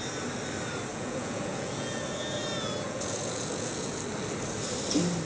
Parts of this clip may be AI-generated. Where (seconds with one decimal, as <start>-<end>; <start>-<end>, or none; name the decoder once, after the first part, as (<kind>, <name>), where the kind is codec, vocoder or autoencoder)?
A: 0.9-4.0 (vocoder, Vocos)